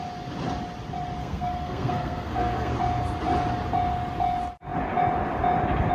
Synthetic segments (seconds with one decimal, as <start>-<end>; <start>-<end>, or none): 1.2-2.7